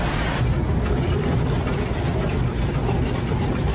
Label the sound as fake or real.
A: real